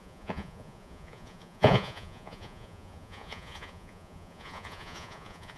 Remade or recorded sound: remade